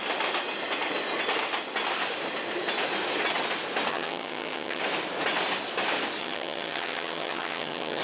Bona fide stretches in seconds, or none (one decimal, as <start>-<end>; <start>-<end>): 0.0-3.9; 4.8-6.2

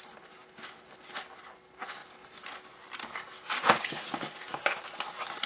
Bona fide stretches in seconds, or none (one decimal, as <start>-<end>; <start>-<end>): 0.0-5.5